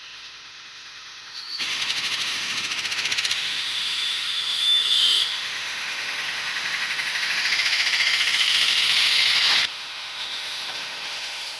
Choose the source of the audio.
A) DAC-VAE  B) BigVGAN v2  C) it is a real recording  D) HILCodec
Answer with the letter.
A